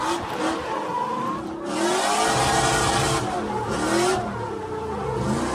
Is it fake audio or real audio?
real